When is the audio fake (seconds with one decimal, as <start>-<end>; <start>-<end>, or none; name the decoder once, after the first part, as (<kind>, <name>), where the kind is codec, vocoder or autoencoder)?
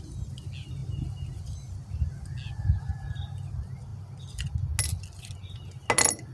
none